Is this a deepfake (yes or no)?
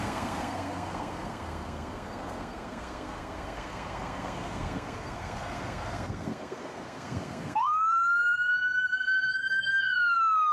yes